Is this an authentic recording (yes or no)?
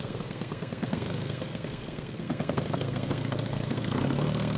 no